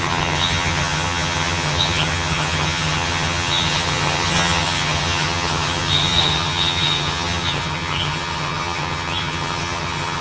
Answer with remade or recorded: remade